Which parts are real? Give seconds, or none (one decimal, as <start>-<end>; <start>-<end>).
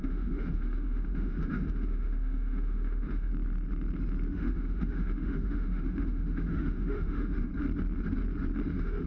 3.3-4.3; 7.5-8.7